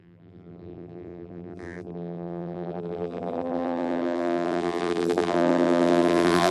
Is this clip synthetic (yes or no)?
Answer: yes